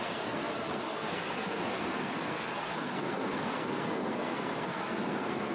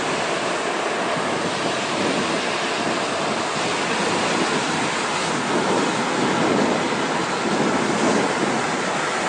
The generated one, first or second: first